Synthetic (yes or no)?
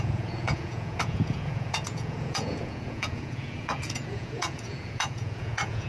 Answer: yes